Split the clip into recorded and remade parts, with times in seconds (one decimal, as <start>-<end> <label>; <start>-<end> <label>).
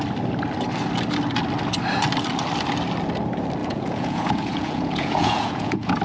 0.0-3.6 recorded; 3.6-6.0 remade